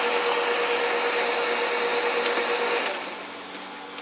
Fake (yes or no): no